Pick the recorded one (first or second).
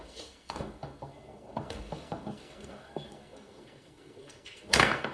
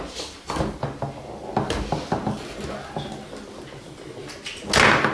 second